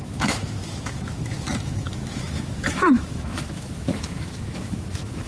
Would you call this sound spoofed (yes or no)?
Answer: yes